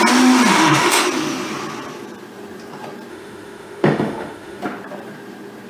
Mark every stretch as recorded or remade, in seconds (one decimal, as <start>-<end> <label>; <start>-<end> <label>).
0.0-0.5 recorded; 0.5-1.0 remade; 1.0-3.1 recorded; 3.1-4.6 remade; 4.6-5.7 recorded